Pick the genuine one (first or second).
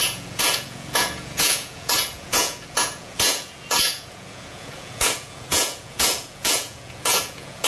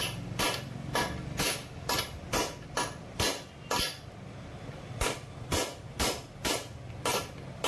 second